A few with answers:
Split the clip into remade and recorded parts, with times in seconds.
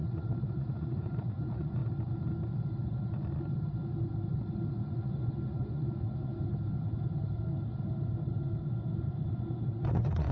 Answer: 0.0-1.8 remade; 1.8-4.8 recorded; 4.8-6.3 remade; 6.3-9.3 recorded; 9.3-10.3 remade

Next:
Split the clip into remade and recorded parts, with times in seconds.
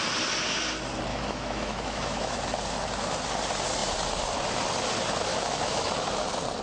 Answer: 0.0-1.1 recorded; 1.1-2.4 remade; 2.4-5.3 recorded; 5.3-5.9 remade; 5.9-6.6 recorded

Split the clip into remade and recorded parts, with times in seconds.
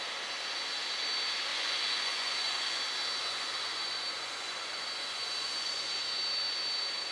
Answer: 0.0-1.5 recorded; 1.5-2.8 remade; 2.8-3.2 recorded; 3.2-6.0 remade; 6.0-7.1 recorded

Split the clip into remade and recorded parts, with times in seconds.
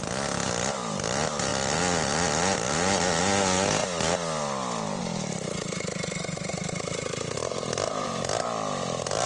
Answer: 0.0-6.5 recorded; 6.5-8.2 remade; 8.2-9.3 recorded